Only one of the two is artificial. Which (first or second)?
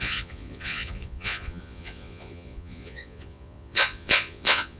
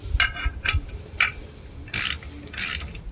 first